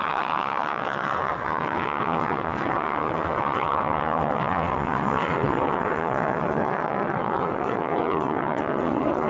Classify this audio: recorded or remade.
remade